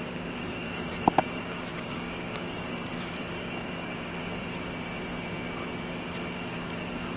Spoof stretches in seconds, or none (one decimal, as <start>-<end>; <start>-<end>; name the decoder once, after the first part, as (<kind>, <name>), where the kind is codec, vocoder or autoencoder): 0.0-4.1 (codec, DAC); 6.5-7.2